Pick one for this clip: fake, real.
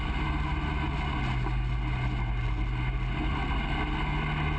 real